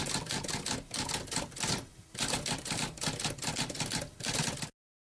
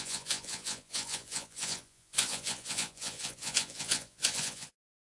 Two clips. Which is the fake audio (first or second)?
second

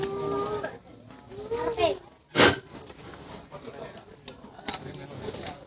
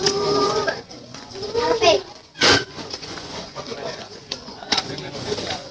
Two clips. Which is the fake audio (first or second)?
second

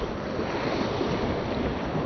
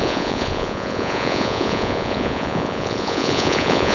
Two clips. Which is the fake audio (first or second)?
second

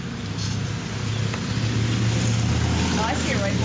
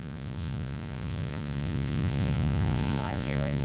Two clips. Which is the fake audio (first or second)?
second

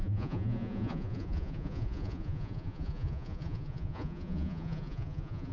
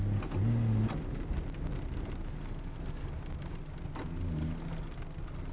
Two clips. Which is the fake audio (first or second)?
first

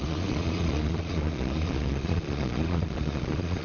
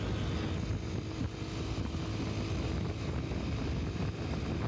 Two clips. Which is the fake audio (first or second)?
first